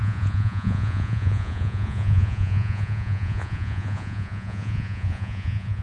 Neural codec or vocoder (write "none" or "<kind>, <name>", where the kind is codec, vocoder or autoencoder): vocoder, Vocos